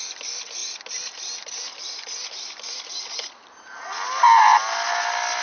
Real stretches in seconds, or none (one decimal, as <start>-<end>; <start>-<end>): 0.0-5.4